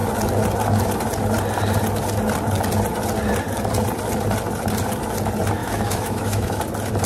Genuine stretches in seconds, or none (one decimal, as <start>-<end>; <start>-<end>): 0.0-5.6; 6.6-7.1